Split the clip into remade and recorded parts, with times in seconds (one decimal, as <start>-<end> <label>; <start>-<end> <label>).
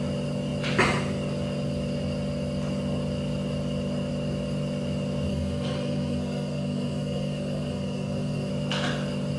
0.0-5.3 recorded; 5.3-8.5 remade; 8.5-9.4 recorded